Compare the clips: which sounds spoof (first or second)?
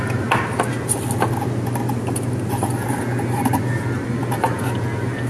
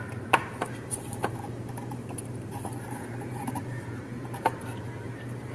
second